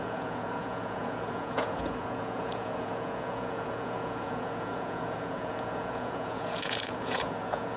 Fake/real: fake